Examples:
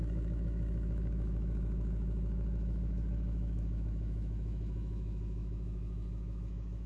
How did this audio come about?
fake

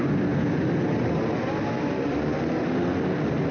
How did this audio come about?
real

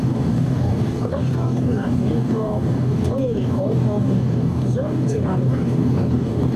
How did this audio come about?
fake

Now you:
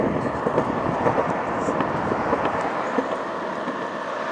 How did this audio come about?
real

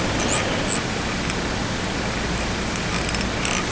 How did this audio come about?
real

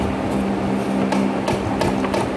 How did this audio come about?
real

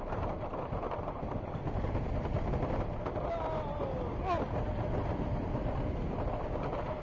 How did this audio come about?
real